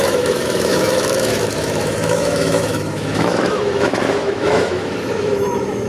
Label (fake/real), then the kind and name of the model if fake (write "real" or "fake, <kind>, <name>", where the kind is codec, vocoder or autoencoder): fake, autoencoder, DAC-VAE